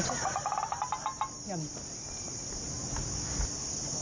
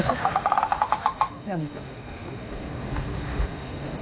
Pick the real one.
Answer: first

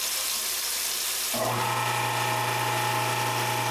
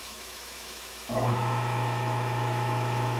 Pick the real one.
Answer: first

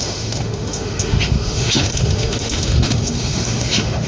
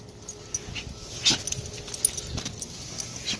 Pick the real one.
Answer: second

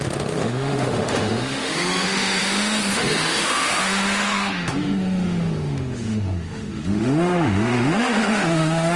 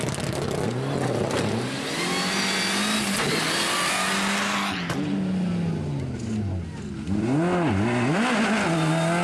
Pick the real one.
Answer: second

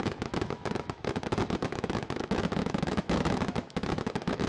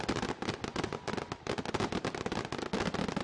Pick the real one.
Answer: second